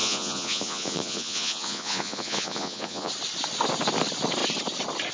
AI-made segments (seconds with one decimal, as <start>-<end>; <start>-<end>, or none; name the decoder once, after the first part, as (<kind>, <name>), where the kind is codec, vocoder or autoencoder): 0.0-3.1 (vocoder, Vocos)